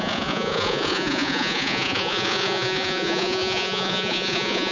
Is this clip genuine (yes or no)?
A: no